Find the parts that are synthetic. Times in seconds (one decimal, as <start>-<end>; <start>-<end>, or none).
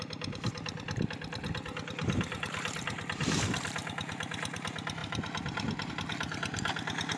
none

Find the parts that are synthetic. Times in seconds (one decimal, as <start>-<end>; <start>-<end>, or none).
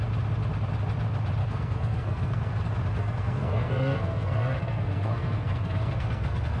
1.4-2.6; 3.0-6.6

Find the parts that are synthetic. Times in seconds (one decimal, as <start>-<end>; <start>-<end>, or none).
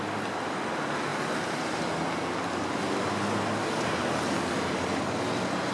none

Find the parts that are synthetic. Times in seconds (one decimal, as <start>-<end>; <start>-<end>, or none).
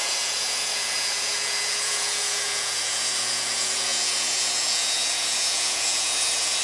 0.0-6.6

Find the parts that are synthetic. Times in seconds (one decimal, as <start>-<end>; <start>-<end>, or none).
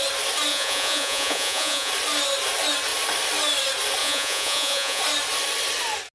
0.5-1.9; 4.0-5.0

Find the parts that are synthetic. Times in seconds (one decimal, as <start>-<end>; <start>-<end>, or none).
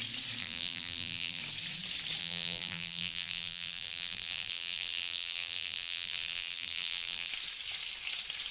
0.4-1.4; 2.2-7.3